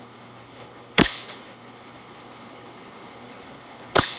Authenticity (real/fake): fake